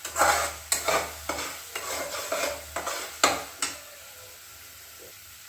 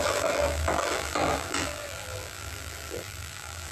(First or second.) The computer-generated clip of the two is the second